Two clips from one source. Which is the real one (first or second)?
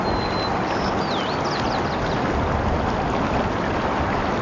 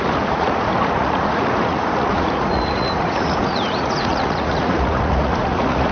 first